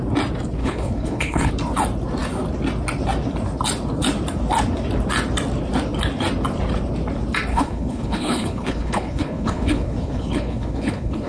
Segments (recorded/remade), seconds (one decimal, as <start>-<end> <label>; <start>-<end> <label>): 0.0-0.6 recorded; 0.6-1.5 remade; 1.5-7.5 recorded; 7.5-11.3 remade

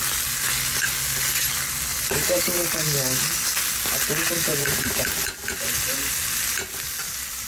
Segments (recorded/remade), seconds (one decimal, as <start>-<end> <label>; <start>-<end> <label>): 0.0-4.5 recorded; 4.5-5.3 remade; 5.3-7.5 recorded

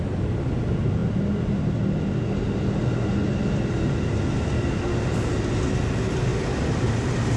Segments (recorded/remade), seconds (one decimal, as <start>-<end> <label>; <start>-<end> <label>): 0.0-7.4 recorded

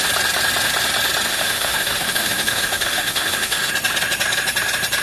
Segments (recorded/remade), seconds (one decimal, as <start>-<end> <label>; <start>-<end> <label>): 0.0-1.3 recorded; 1.3-3.7 remade; 3.7-5.0 recorded

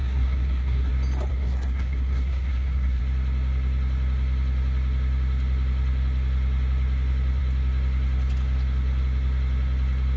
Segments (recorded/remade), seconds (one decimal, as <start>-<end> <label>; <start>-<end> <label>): 0.0-0.9 remade; 0.9-1.3 recorded; 1.3-3.0 remade; 3.0-10.2 recorded